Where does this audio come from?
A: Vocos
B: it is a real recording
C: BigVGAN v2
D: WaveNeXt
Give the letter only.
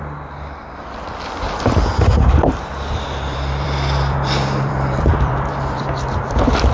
C